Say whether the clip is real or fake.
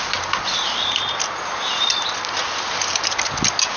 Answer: real